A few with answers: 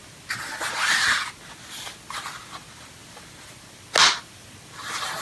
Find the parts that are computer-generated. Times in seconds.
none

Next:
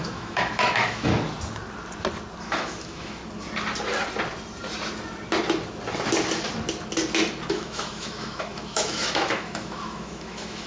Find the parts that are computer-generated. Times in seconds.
0.0-1.1; 2.4-3.2; 7.5-10.7

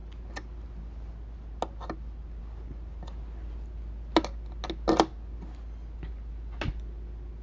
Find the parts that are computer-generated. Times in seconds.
none